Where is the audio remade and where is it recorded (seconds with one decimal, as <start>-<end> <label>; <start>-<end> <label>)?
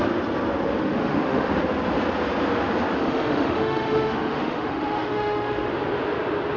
0.0-0.8 recorded; 0.8-1.5 remade; 1.5-3.0 recorded; 3.0-5.7 remade; 5.7-6.6 recorded